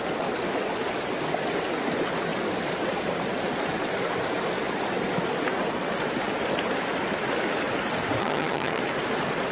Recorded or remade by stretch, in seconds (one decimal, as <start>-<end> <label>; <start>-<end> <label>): 0.0-8.2 recorded; 8.2-8.8 remade; 8.8-9.5 recorded